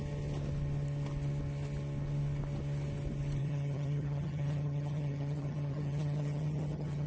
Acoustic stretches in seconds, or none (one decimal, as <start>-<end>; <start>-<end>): 0.0-3.4